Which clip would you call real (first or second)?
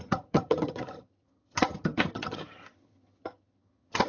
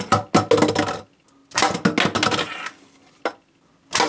second